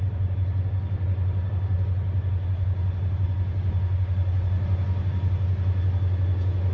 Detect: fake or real real